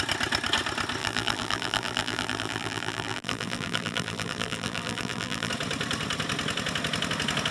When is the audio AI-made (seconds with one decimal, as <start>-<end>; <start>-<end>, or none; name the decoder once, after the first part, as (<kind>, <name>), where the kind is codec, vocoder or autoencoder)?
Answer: 1.0-5.5 (vocoder, BigVGAN v2)